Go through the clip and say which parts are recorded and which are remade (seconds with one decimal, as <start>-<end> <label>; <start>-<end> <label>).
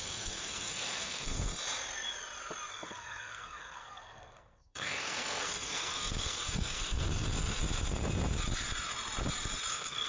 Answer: 0.0-1.5 remade; 1.5-2.7 recorded; 2.7-7.6 remade; 7.6-9.7 recorded; 9.7-10.1 remade